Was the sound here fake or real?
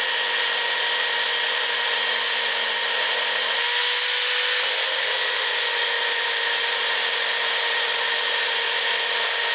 real